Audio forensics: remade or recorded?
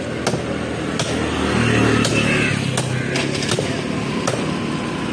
recorded